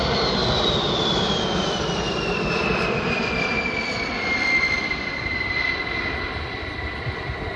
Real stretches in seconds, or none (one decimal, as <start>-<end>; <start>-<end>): 0.0-7.6